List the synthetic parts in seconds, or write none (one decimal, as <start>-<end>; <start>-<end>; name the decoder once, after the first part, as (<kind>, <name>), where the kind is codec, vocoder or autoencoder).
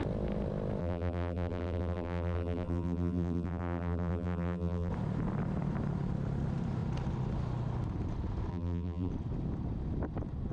0.8-4.9 (vocoder, BigVGAN v2); 8.5-9.1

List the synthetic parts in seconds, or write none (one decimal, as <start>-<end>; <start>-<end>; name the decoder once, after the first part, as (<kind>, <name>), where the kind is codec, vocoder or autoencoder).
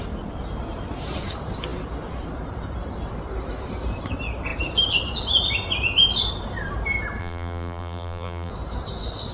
7.2-8.5 (vocoder, BigVGAN v2)